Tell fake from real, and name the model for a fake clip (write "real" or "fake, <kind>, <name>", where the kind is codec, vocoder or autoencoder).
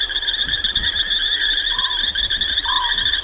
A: real